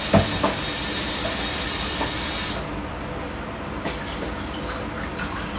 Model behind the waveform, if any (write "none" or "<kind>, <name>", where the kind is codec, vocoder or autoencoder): none